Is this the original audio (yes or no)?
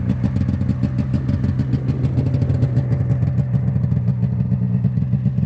yes